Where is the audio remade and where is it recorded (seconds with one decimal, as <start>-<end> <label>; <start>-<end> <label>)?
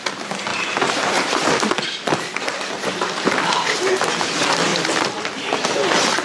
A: 0.0-0.5 recorded; 0.5-4.2 remade; 4.2-4.7 recorded; 4.7-5.7 remade; 5.7-6.2 recorded